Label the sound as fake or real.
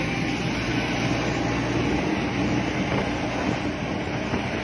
real